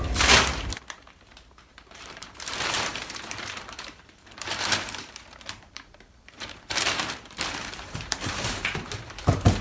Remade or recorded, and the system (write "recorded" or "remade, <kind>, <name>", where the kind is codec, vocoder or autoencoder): remade, vocoder, BigVGAN v2